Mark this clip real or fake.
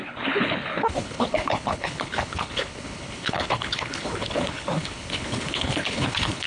fake